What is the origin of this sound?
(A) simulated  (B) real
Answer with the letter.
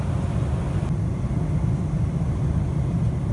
B